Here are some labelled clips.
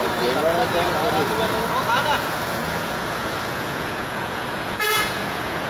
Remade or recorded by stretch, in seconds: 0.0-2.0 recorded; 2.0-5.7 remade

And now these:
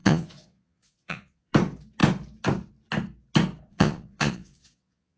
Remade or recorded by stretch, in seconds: 0.0-1.5 remade; 1.5-3.7 recorded; 3.7-5.2 remade

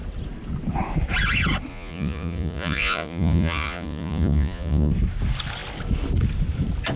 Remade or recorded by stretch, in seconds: 0.0-1.7 recorded; 1.7-4.9 remade; 4.9-7.0 recorded

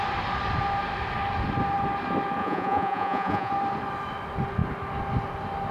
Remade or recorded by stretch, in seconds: 0.0-2.4 recorded; 2.4-3.5 remade; 3.5-5.7 recorded

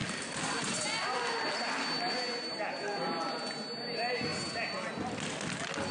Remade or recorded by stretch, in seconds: 0.0-5.9 recorded

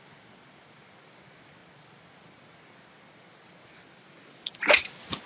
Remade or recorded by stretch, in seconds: 0.0-5.3 recorded